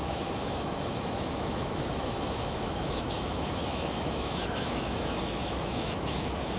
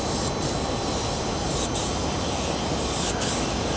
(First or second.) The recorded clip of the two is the second